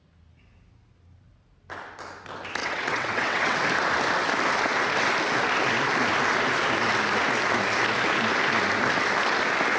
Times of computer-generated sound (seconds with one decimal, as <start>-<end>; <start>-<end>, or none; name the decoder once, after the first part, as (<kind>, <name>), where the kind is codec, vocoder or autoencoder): 2.6-3.6 (vocoder, WaveNeXt)